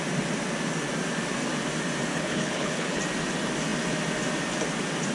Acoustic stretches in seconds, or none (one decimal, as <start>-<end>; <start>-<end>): 0.0-2.1; 3.0-5.1